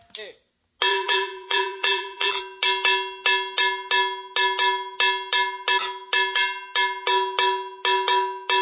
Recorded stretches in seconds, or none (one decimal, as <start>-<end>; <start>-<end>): 0.0-0.9; 2.4-8.6